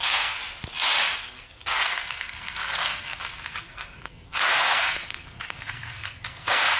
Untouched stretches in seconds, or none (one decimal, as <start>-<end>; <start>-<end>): 0.4-1.2